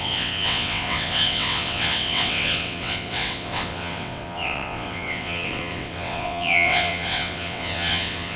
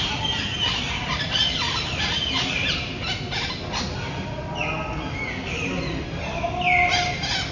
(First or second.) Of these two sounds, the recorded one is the second